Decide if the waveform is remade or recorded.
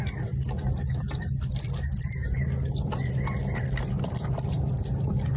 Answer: remade